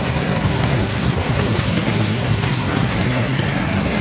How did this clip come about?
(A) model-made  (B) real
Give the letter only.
A